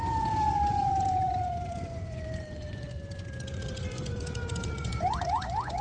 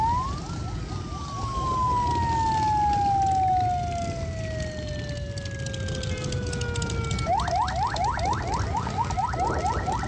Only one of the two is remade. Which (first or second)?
first